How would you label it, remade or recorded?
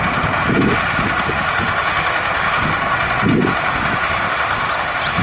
recorded